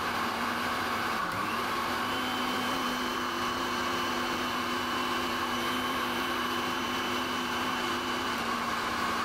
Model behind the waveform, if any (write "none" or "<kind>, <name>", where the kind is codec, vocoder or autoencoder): vocoder, BigVGAN v2